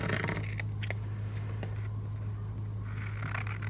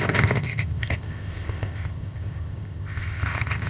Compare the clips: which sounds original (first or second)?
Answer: first